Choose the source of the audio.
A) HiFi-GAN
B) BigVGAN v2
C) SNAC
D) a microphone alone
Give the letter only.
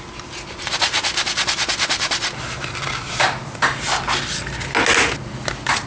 D